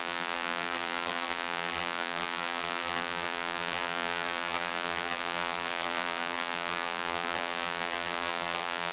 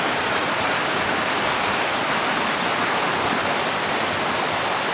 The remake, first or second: first